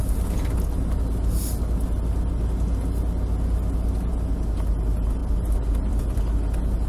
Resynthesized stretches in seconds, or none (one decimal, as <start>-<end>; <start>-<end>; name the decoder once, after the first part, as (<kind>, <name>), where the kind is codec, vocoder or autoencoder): 5.2-6.3 (vocoder, BigVGAN v2)